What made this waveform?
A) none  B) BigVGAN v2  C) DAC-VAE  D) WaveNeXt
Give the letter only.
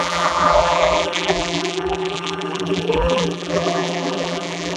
B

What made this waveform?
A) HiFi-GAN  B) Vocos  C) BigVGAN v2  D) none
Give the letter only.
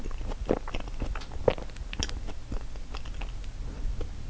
D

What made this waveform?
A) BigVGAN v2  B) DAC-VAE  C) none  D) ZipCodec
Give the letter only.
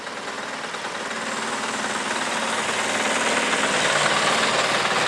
C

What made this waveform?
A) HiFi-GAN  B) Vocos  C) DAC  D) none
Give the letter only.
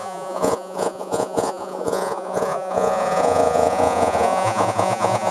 B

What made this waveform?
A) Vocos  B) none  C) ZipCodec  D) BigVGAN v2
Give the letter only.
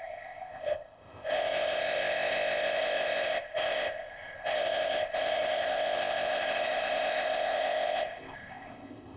C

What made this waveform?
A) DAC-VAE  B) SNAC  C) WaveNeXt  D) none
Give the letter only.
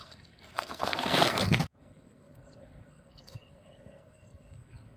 B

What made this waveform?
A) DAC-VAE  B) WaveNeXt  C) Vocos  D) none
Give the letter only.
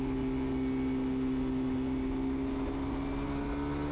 D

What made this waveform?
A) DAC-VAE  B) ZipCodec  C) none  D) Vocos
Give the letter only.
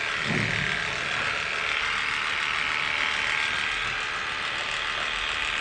C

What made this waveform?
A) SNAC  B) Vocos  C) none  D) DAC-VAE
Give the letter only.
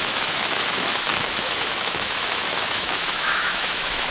D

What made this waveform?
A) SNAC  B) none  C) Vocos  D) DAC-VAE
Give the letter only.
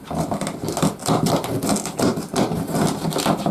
B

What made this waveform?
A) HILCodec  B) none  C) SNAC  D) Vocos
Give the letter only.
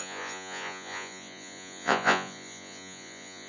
D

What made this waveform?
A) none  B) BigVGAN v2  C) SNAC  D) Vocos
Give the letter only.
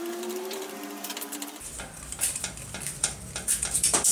B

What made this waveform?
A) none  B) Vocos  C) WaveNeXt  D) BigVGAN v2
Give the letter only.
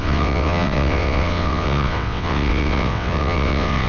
C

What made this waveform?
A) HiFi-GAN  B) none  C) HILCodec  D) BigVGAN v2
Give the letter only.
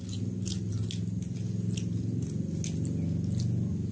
B